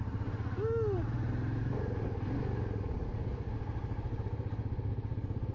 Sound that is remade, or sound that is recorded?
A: recorded